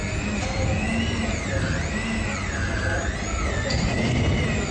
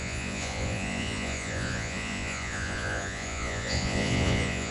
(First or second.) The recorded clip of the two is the first